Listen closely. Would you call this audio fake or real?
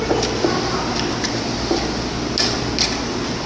real